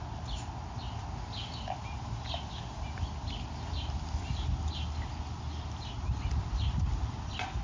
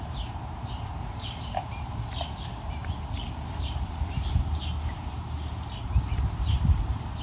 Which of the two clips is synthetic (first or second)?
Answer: second